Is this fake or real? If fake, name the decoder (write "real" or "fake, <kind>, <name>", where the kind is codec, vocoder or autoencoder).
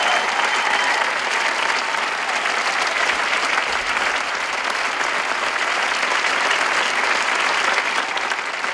real